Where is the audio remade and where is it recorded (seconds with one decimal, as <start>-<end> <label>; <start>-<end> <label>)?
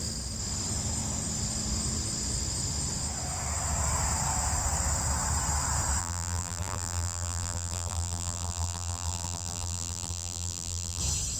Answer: 0.0-6.0 recorded; 6.0-11.0 remade; 11.0-11.4 recorded